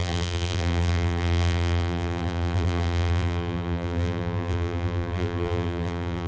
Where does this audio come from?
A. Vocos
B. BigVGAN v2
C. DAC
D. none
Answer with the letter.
B